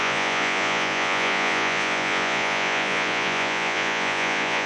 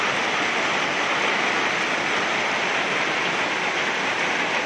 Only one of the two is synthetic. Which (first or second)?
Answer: first